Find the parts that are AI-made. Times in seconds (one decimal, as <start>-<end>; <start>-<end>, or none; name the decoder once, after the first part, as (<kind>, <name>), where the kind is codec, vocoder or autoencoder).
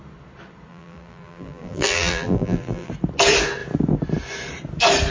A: 0.7-2.9 (vocoder, BigVGAN v2)